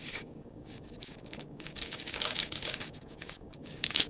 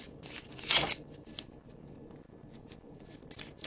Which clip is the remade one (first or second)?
first